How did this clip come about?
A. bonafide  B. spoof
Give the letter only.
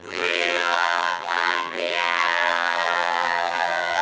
B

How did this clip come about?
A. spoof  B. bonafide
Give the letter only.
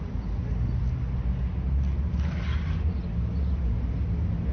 B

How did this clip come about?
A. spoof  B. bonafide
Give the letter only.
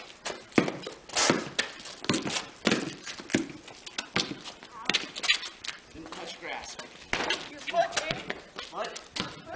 B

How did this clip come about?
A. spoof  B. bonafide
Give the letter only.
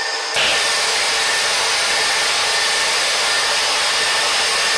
B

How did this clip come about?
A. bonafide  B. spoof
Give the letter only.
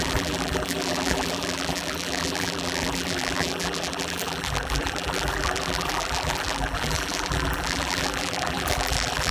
B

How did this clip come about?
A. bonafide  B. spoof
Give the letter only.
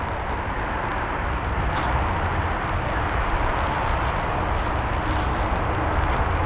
A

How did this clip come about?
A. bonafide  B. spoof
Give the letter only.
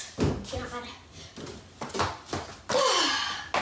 A